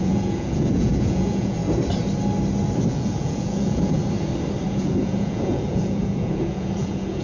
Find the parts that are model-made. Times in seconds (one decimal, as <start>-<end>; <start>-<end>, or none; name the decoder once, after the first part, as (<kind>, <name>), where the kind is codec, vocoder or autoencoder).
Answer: 0.0-1.6 (vocoder, Vocos); 2.9-4.0; 4.7-7.2